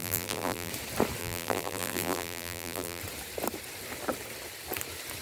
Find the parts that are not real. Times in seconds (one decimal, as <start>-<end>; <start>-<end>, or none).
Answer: 0.0-0.7; 1.2-3.0